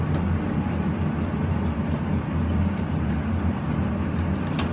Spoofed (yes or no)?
no